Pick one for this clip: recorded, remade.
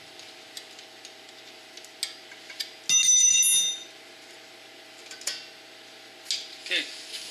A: recorded